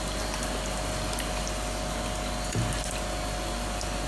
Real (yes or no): yes